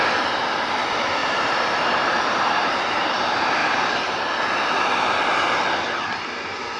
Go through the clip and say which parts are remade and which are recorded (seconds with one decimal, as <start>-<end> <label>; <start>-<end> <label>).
0.0-1.2 recorded; 1.2-3.2 remade; 3.2-3.6 recorded; 3.6-4.4 remade; 4.4-6.8 recorded